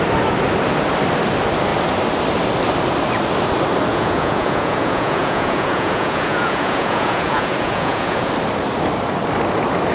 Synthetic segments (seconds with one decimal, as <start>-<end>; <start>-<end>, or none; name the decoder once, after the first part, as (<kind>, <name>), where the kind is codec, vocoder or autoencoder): 3.9-8.3 (vocoder, Vocos)